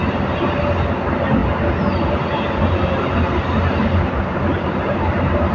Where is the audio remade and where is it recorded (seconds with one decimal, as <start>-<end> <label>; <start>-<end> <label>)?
0.0-5.5 recorded